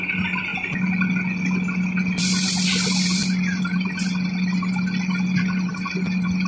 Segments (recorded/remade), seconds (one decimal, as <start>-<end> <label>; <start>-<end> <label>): 0.0-6.5 recorded